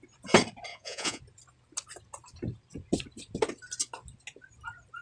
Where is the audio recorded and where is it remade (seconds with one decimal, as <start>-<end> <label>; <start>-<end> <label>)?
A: 0.0-0.7 recorded; 0.7-1.2 remade; 1.2-5.0 recorded